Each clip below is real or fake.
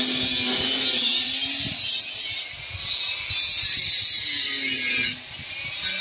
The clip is real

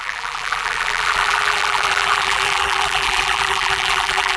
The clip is fake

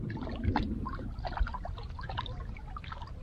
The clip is real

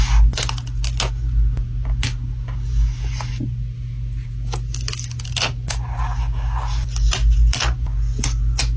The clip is real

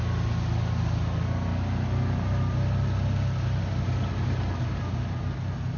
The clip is real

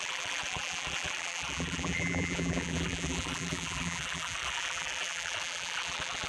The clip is fake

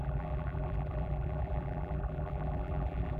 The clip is fake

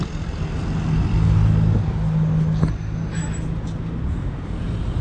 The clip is real